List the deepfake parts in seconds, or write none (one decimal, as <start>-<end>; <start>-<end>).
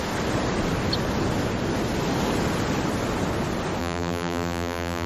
3.8-5.1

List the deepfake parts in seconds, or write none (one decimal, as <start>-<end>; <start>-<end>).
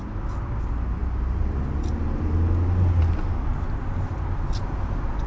none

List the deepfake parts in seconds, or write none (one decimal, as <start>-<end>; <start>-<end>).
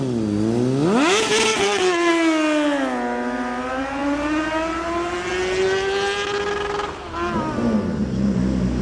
1.5-2.1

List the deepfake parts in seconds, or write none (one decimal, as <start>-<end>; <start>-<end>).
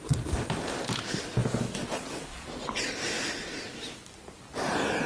none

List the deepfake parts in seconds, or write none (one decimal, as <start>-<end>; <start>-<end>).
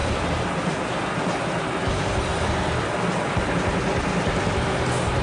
none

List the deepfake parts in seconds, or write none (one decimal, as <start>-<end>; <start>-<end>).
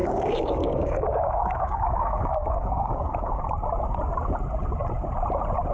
0.0-3.4